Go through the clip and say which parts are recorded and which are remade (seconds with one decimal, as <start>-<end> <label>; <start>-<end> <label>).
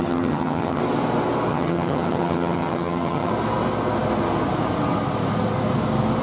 0.0-0.8 remade; 0.8-1.5 recorded; 1.5-3.3 remade; 3.3-6.2 recorded